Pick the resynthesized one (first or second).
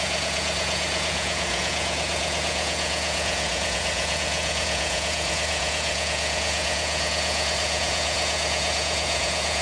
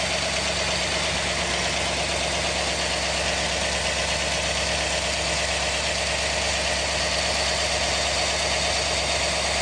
first